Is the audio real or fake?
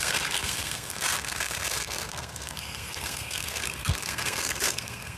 fake